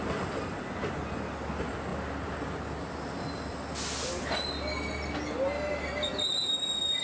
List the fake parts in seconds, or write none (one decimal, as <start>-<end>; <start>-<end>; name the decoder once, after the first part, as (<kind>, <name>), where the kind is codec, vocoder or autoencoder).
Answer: none